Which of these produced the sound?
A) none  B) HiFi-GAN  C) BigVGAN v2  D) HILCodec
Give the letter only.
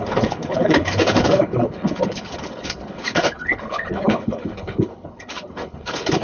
D